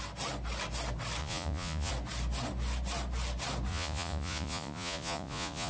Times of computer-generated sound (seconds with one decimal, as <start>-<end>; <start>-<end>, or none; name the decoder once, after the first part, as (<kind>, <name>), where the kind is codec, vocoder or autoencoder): 1.2-1.9 (vocoder, Vocos); 3.7-5.7